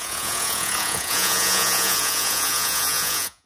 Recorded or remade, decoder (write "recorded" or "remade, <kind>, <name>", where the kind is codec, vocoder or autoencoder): remade, vocoder, Vocos